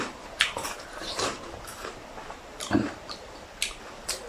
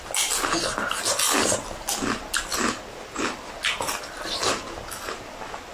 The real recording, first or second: second